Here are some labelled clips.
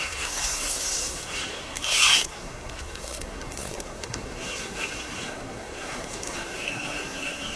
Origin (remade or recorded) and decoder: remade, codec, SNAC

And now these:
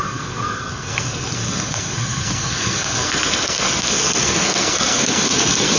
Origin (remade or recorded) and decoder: remade, codec, SNAC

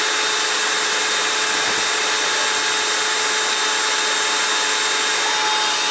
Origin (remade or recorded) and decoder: recorded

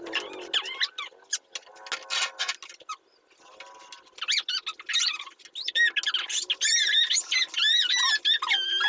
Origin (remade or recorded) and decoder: recorded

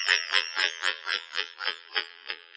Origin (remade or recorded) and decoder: remade, vocoder, BigVGAN v2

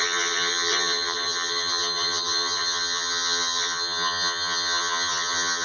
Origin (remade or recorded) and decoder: remade, vocoder, HiFi-GAN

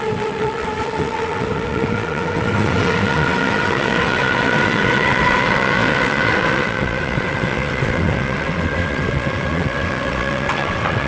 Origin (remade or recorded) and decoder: remade, vocoder, WaveNeXt